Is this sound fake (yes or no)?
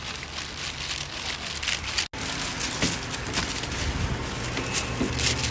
no